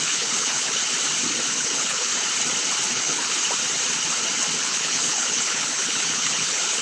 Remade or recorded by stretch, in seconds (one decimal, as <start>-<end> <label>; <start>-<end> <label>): 0.0-0.8 remade; 0.8-1.5 recorded; 1.5-2.1 remade; 2.1-2.9 recorded; 2.9-3.4 remade; 3.4-4.6 recorded; 4.6-6.8 remade